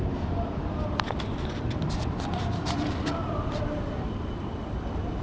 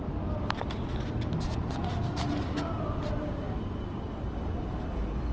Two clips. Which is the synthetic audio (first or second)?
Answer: first